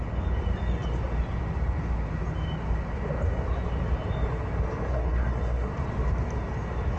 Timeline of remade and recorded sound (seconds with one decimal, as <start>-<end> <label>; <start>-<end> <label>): 0.0-4.9 recorded; 4.9-5.7 remade; 5.7-7.0 recorded